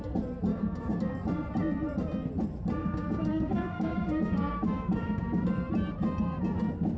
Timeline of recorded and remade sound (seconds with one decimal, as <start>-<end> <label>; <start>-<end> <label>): 0.0-0.5 recorded; 0.5-1.0 remade; 1.0-2.8 recorded; 2.8-5.4 remade; 5.4-7.0 recorded